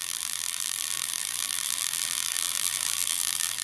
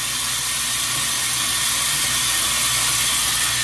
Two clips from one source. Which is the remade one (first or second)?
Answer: first